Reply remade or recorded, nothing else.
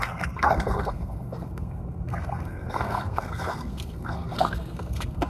remade